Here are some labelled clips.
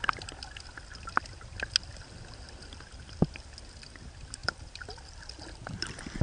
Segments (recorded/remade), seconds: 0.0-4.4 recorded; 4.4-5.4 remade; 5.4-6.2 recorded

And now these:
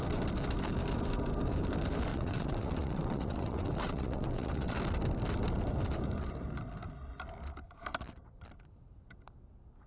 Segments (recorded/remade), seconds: 0.0-2.1 recorded; 2.1-4.8 remade; 4.8-9.9 recorded

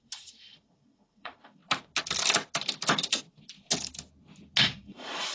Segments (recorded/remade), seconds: 0.0-1.6 remade; 1.6-4.6 recorded; 4.6-5.3 remade

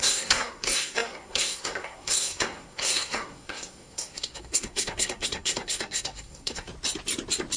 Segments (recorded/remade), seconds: 0.0-6.7 remade; 6.7-7.6 recorded

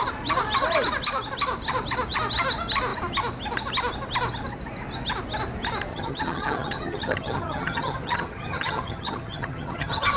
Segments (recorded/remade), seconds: 0.0-5.9 recorded; 5.9-10.2 remade